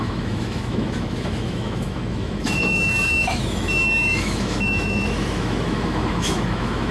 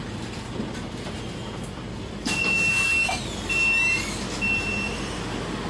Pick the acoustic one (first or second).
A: second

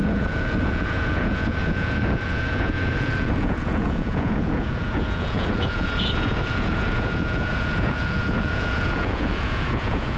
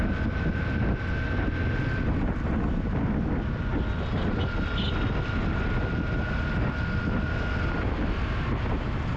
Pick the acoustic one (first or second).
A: second